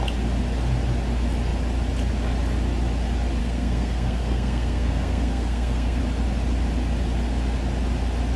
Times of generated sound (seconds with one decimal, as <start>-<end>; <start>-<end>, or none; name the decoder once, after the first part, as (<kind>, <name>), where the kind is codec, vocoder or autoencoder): 3.4-6.0 (codec, SNAC)